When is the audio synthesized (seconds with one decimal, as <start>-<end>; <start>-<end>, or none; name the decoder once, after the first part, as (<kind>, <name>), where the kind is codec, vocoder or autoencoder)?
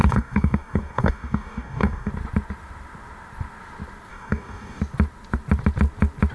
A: 0.0-2.1 (codec, DAC); 4.1-4.8